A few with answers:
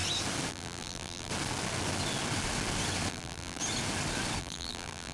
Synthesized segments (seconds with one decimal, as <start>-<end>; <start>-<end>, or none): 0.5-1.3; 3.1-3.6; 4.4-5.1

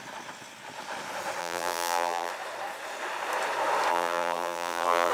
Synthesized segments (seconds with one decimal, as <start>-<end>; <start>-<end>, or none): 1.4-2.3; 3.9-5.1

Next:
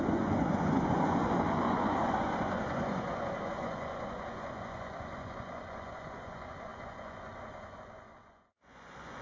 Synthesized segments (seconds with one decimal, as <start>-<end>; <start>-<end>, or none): 0.0-9.2